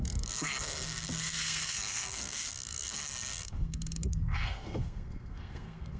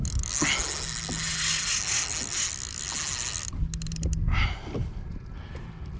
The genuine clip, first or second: second